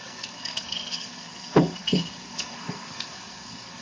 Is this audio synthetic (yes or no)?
yes